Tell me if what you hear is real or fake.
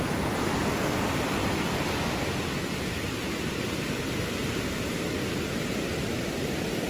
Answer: real